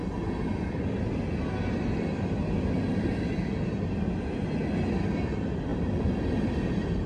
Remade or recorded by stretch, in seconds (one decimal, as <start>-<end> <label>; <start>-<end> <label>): 0.0-7.1 recorded